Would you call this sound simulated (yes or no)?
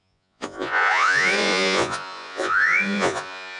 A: yes